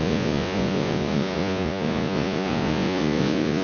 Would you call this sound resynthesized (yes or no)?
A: yes